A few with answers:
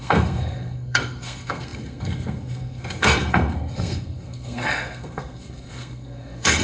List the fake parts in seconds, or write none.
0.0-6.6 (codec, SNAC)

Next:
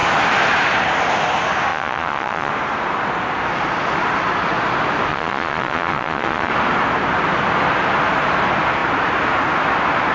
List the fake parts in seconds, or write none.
1.7-2.5 (vocoder, Vocos); 5.1-6.5